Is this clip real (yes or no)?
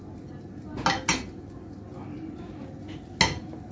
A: yes